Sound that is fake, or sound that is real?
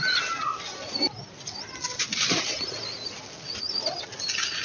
real